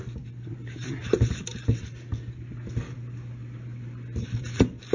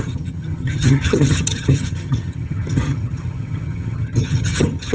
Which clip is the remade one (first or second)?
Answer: second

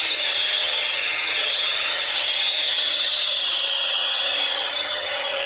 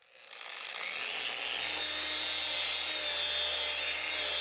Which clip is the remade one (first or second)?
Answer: first